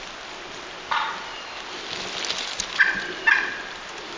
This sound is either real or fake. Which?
real